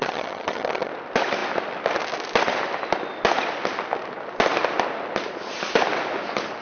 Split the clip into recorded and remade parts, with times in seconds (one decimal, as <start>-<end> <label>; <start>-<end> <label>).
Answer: 0.0-0.9 remade; 0.9-6.6 recorded